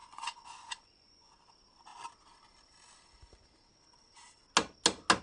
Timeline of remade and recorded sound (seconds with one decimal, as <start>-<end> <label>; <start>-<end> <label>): 0.0-1.3 remade; 1.3-5.2 recorded